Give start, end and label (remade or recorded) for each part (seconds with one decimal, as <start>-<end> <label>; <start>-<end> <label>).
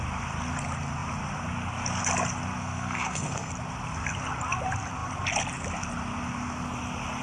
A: 0.0-2.6 recorded; 2.6-3.5 remade; 3.5-7.2 recorded